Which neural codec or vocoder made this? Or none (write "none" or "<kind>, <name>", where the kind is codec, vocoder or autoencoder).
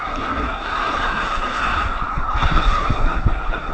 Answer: codec, SNAC